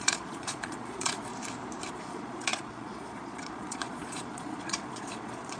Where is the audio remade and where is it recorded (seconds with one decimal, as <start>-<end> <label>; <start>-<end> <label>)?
0.0-1.3 remade; 1.3-1.9 recorded; 1.9-5.6 remade